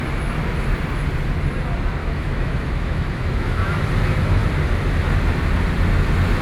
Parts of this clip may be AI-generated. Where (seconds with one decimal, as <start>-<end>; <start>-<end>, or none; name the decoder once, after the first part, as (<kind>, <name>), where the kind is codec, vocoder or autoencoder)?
2.0-3.8 (autoencoder, DAC-VAE)